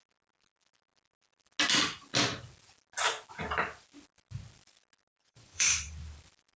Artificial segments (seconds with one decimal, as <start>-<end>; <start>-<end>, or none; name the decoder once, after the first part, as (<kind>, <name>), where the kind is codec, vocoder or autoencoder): 5.2-5.9 (vocoder, Vocos)